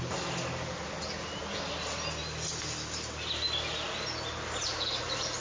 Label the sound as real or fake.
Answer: real